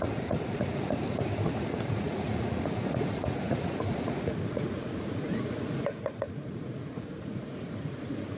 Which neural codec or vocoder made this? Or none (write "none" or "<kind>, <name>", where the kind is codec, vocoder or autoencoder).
vocoder, Vocos